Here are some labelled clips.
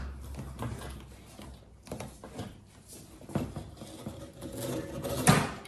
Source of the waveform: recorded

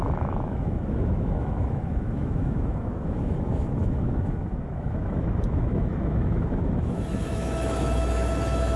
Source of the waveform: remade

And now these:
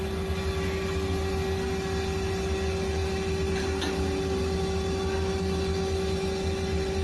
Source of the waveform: recorded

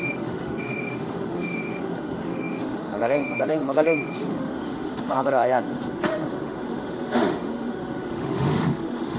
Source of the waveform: remade